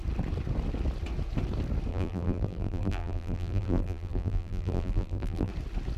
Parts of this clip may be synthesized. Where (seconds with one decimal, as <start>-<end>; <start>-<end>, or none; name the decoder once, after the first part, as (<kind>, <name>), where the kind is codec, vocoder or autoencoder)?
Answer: 1.9-5.5 (vocoder, BigVGAN v2)